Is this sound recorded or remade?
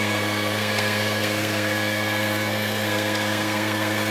remade